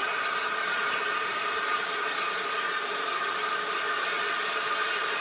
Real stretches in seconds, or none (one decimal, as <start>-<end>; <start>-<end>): 0.0-5.2